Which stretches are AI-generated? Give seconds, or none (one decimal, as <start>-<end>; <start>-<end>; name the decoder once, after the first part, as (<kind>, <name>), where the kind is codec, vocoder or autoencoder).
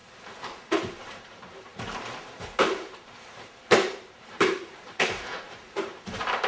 1.0-6.5 (vocoder, BigVGAN v2)